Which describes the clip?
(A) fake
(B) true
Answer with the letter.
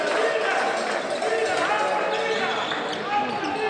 B